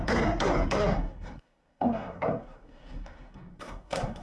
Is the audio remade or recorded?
remade